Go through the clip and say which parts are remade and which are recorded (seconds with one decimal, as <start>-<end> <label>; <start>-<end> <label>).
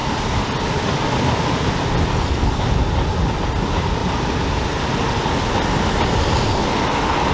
0.0-2.1 recorded; 2.1-2.6 remade; 2.6-7.3 recorded